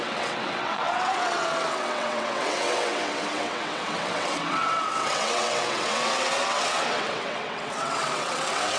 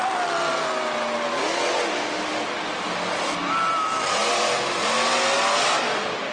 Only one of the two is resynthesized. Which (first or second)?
first